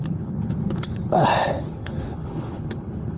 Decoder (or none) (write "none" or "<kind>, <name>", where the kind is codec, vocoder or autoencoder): codec, HILCodec